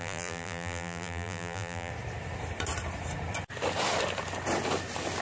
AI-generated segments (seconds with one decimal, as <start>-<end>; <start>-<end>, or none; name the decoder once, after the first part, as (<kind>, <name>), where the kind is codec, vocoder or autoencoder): 0.0-1.9 (vocoder, BigVGAN v2)